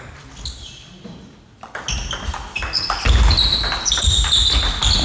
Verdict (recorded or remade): recorded